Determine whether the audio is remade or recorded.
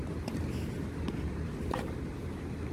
recorded